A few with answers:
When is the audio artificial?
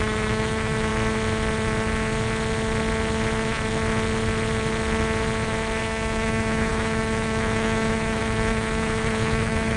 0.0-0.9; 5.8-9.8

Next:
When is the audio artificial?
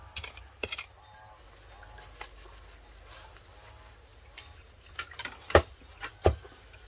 0.0-1.4; 4.1-6.1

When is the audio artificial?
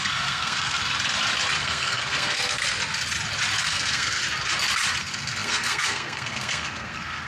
0.0-0.8; 1.6-2.6; 3.6-4.2; 5.0-7.3